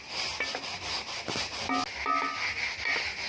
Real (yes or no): yes